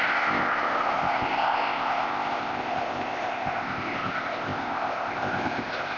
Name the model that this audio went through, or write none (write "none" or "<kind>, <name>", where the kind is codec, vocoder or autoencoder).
codec, ZipCodec